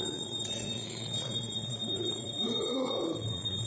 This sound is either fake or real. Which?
fake